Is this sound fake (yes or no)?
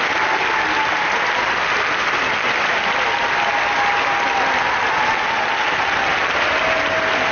no